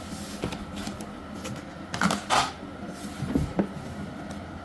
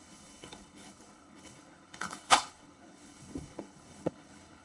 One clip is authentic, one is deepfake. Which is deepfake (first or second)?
second